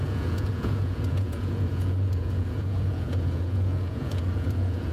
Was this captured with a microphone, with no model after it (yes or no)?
no